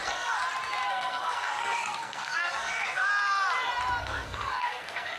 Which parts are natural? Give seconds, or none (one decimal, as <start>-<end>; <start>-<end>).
0.4-0.9; 3.1-4.0